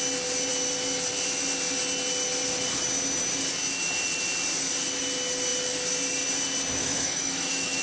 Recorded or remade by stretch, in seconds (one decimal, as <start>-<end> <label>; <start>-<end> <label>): 0.0-6.8 recorded; 6.8-7.8 remade